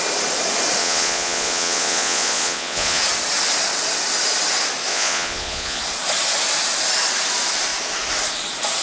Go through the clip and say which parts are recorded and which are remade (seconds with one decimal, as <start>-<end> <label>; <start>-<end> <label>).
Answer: 0.0-0.8 recorded; 0.8-3.0 remade; 3.0-4.9 recorded; 4.9-5.8 remade; 5.8-8.8 recorded